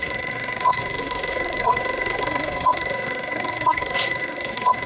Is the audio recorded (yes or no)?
no